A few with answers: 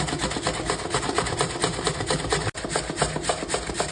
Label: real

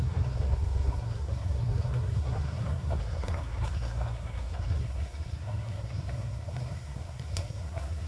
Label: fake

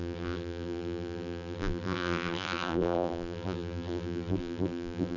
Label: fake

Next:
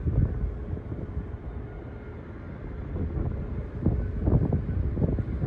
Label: real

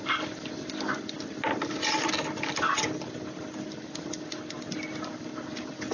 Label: real